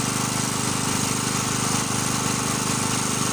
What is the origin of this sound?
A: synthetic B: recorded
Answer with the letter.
B